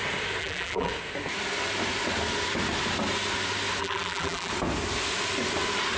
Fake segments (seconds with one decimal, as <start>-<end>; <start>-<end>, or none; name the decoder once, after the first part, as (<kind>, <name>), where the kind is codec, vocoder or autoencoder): 0.4-0.9 (vocoder, BigVGAN v2); 3.8-4.5